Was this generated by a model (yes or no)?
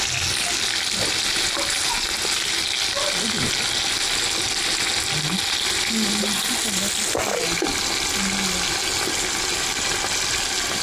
no